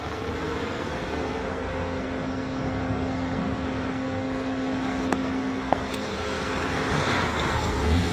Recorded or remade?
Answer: remade